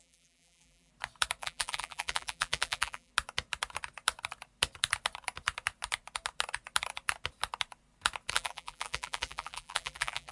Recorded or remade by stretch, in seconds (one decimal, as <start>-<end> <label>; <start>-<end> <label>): 0.0-0.9 remade; 0.9-1.4 recorded; 1.4-3.1 remade; 3.1-8.3 recorded; 8.3-10.3 remade